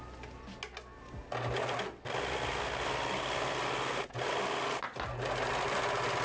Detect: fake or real real